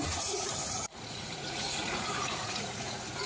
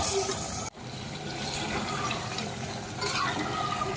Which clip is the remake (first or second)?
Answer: first